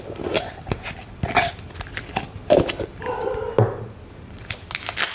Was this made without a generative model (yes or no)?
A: yes